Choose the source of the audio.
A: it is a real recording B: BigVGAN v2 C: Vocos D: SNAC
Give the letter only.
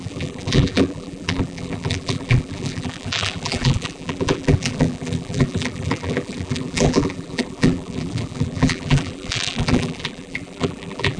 B